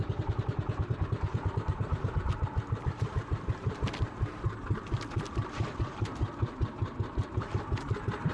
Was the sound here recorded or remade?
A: remade